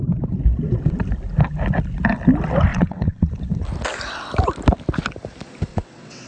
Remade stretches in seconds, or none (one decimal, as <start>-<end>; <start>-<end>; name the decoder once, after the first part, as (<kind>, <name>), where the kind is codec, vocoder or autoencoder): 2.7-3.3 (vocoder, WaveNeXt); 5.7-6.3